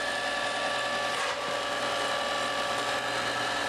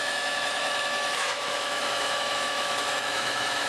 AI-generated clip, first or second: second